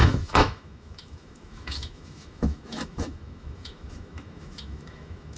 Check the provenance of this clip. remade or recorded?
remade